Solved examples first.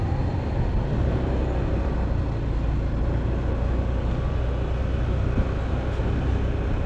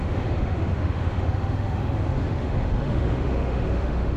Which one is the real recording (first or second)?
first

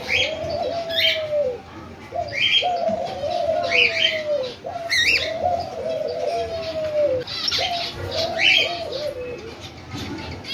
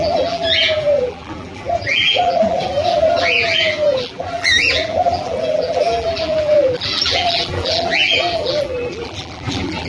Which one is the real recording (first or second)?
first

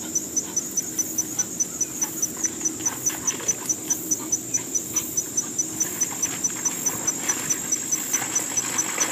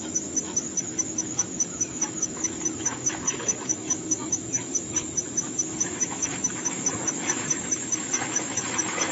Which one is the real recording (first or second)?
first